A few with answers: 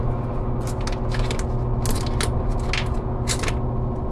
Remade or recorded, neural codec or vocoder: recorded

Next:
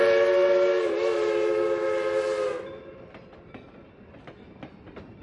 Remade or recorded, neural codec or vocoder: recorded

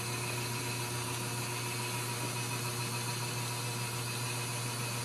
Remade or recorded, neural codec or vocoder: recorded